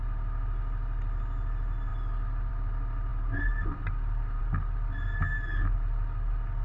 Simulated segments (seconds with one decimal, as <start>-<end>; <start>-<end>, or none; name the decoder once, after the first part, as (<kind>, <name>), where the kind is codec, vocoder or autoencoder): none